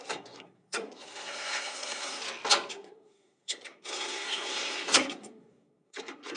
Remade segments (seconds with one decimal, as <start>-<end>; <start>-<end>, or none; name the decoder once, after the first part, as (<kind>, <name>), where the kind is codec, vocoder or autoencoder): 0.0-2.2 (codec, SNAC); 2.7-6.4